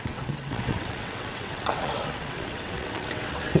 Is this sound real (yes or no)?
no